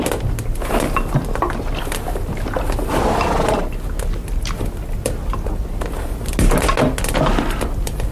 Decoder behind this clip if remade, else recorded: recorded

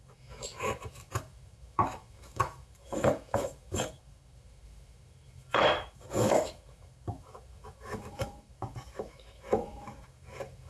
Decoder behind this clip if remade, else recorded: remade, autoencoder, DAC-VAE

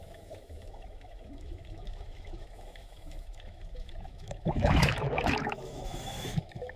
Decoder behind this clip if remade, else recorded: remade, autoencoder, DAC-VAE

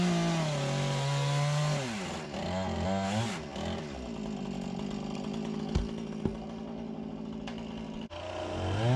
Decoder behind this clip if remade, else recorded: recorded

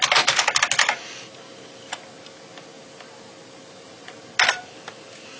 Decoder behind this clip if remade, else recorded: recorded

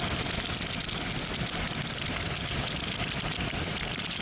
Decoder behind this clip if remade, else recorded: recorded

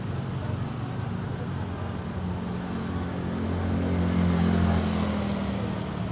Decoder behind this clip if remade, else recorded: recorded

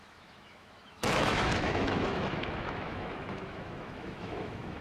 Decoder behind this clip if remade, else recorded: remade, autoencoder, DAC-VAE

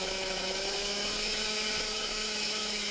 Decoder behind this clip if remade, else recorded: remade, autoencoder, DAC-VAE